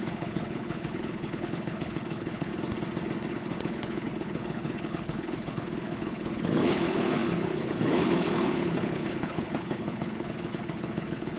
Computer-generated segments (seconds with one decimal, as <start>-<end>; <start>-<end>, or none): 0.0-2.5; 3.3-11.4